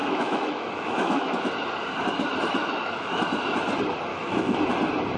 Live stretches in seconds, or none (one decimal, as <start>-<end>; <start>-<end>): 1.5-2.6; 3.3-4.1; 4.6-5.2